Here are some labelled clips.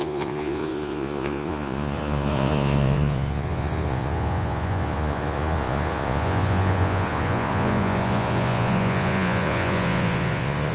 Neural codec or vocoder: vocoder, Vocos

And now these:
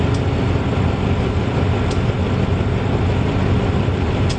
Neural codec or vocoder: none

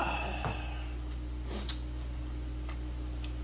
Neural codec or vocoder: none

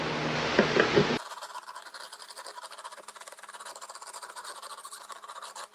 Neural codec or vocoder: none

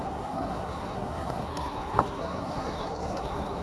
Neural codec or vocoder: codec, SNAC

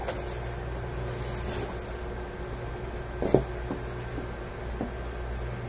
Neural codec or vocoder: none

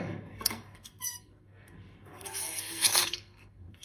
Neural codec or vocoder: codec, SNAC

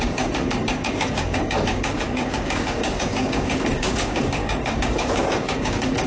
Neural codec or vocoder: codec, DAC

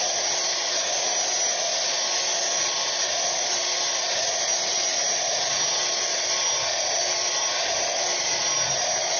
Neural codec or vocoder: none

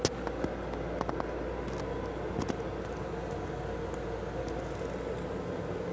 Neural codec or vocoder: none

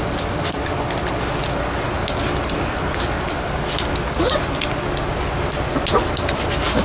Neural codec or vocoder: none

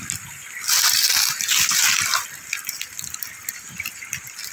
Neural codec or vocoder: none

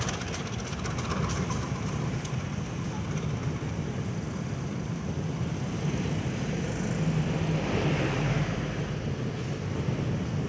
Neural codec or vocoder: none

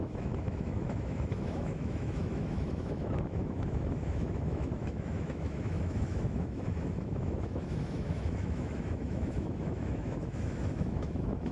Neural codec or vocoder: autoencoder, DAC-VAE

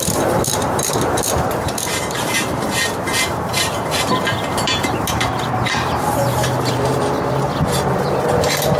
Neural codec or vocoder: vocoder, BigVGAN v2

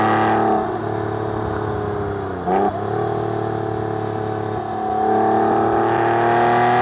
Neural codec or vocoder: none